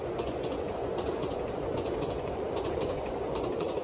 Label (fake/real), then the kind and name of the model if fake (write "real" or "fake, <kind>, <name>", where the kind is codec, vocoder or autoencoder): fake, vocoder, Vocos